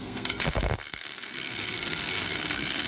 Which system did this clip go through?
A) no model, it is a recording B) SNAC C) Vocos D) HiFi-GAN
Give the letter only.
B